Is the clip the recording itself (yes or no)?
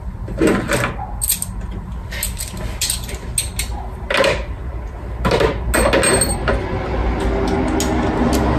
yes